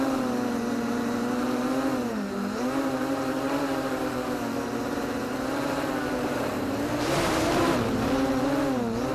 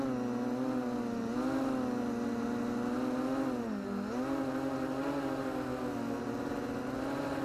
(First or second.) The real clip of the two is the second